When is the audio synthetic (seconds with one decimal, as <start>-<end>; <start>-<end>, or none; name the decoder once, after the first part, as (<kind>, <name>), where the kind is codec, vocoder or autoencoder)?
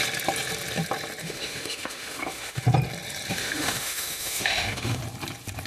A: 1.2-2.6 (autoencoder, DAC-VAE); 3.3-5.0